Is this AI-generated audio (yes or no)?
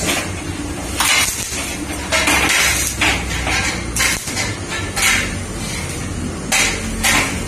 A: no